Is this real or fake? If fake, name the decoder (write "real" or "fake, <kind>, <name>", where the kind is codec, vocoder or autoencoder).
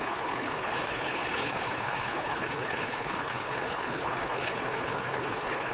fake, codec, HILCodec